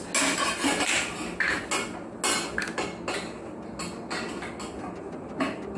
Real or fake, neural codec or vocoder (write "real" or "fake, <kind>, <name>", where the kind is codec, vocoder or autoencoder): real